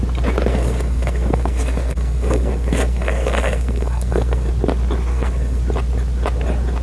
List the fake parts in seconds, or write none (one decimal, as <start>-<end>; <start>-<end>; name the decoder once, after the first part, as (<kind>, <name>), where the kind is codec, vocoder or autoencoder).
0.5-4.5 (codec, SNAC); 5.1-5.6